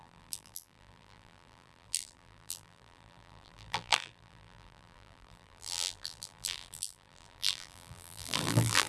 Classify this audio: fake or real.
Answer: fake